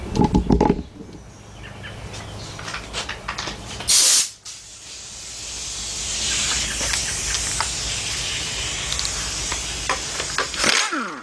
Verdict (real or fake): real